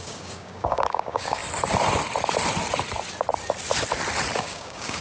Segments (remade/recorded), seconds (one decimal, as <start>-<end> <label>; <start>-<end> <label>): 0.0-1.4 remade; 1.4-4.4 recorded; 4.4-5.0 remade